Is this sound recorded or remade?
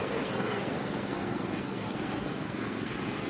remade